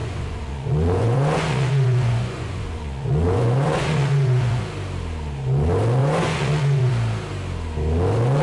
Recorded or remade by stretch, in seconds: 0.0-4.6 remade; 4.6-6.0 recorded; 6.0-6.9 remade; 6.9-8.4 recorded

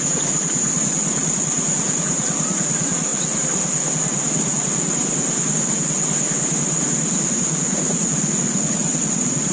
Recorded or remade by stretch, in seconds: 0.0-3.1 remade; 3.1-7.3 recorded; 7.3-9.5 remade

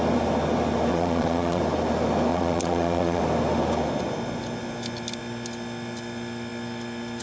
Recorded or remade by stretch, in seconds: 0.0-0.9 recorded; 0.9-1.6 remade; 1.6-2.3 recorded; 2.3-3.2 remade; 3.2-7.2 recorded

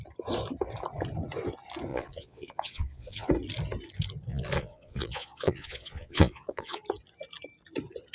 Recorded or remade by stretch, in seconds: 0.0-1.9 recorded; 1.9-3.3 remade; 3.3-4.3 recorded; 4.3-6.8 remade; 6.8-8.1 recorded

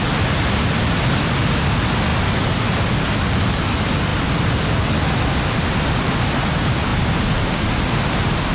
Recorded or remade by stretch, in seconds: 0.0-8.5 recorded

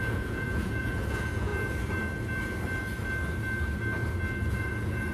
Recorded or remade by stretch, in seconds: 0.0-1.5 remade; 1.5-4.5 recorded; 4.5-5.1 remade